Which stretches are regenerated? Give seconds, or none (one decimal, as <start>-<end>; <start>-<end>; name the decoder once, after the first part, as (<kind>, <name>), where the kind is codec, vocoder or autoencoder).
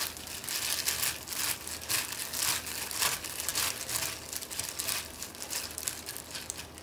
none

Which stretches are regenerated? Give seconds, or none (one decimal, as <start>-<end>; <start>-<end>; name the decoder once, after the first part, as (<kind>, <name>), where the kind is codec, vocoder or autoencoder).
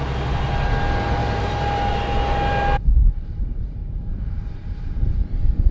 1.2-1.9 (vocoder, BigVGAN v2); 3.8-5.2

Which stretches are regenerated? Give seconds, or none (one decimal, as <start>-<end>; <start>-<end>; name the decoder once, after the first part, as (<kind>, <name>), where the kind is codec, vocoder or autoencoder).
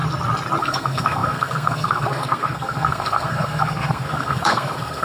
0.6-5.0 (codec, SNAC)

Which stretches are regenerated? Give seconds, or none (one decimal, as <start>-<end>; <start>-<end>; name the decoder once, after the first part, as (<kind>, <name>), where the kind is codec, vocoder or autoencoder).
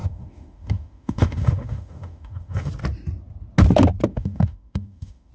0.0-2.7 (autoencoder, DAC-VAE); 4.1-5.3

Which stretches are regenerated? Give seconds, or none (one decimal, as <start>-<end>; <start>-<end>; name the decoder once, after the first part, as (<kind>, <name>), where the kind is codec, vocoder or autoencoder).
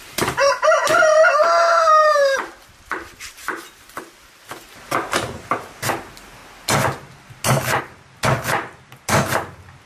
none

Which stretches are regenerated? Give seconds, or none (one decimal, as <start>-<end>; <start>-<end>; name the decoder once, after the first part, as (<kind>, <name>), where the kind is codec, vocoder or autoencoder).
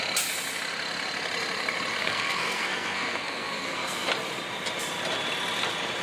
2.0-4.1 (codec, SNAC)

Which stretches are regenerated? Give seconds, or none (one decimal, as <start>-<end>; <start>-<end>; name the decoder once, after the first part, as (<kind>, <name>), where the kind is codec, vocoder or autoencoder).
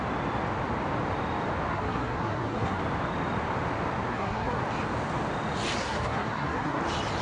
1.7-2.8 (codec, SNAC); 4.1-4.6; 5.8-6.8